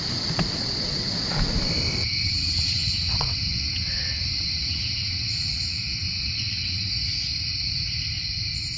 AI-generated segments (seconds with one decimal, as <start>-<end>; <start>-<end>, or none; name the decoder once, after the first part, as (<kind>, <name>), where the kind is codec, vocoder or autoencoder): 0.6-1.1 (vocoder, WaveNeXt); 2.0-6.9

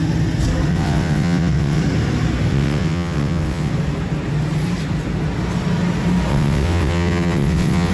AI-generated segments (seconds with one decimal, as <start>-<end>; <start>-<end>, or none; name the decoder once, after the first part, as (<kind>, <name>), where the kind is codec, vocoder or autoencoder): 0.7-1.8 (vocoder, WaveNeXt); 2.5-3.7; 6.3-7.9